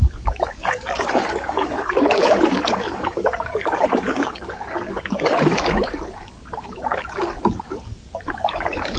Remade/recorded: remade